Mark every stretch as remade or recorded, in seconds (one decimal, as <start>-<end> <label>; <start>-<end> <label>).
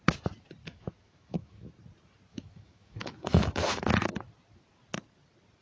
0.0-0.6 recorded; 0.6-1.7 remade; 1.7-2.3 recorded; 2.3-3.9 remade; 3.9-5.6 recorded